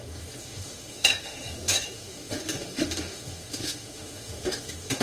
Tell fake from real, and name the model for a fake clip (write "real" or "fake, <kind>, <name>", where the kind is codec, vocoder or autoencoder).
fake, autoencoder, DAC-VAE